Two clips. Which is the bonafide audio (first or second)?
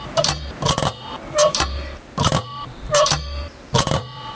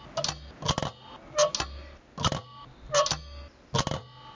second